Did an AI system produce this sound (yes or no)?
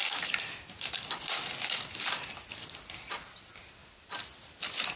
no